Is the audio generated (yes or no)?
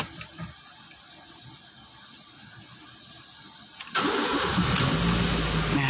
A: no